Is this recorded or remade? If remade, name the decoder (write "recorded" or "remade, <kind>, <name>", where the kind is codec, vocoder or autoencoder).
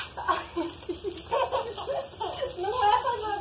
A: recorded